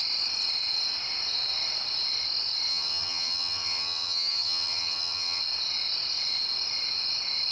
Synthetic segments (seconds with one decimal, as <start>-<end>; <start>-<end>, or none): 2.7-5.4